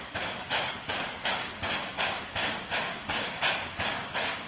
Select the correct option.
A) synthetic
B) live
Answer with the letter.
A